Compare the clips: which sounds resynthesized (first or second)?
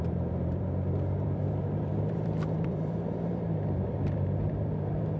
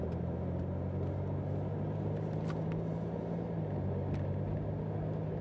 first